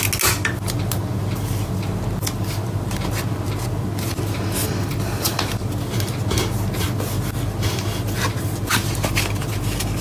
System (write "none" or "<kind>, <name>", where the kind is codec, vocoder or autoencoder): none